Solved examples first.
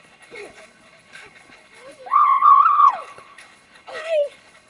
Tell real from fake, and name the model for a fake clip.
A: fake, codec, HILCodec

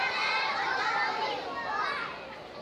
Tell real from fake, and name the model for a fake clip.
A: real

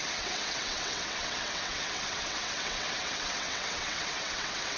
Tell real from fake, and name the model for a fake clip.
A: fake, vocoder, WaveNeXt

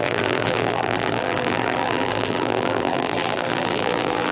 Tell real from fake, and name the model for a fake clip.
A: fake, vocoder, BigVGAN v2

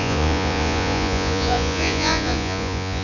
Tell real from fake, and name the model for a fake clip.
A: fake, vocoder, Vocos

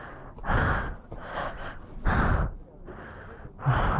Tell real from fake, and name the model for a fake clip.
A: real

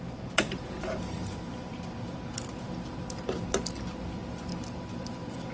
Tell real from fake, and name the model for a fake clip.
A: fake, vocoder, BigVGAN v2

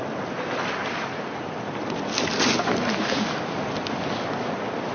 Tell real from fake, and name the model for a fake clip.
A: real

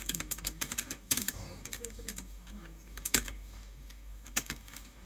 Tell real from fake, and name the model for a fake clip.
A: fake, codec, DAC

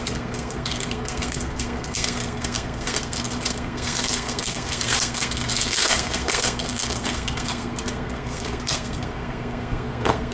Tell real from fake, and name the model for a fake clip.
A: fake, codec, SNAC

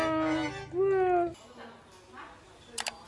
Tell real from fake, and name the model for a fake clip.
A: real